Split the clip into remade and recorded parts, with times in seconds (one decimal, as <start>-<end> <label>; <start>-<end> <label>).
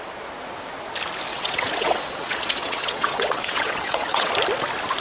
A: 0.0-1.3 recorded; 1.3-4.3 remade; 4.3-5.0 recorded